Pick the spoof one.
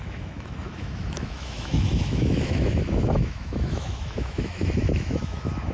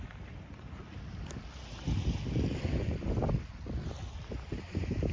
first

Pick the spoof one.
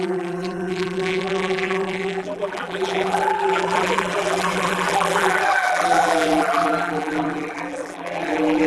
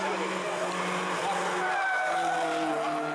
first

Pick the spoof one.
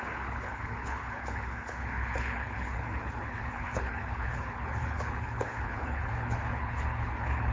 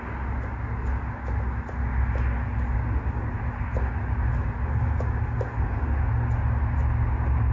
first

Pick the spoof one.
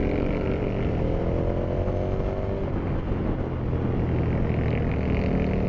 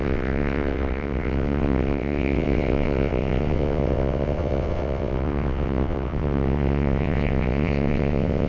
second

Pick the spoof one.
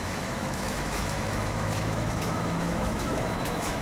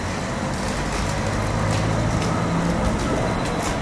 first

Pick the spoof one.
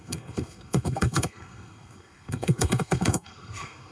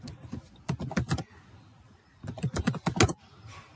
first